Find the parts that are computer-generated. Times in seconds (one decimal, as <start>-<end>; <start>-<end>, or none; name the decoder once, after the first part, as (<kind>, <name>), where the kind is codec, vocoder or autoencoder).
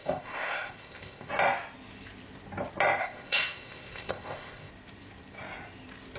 0.0-1.3 (codec, ZipCodec); 3.0-4.7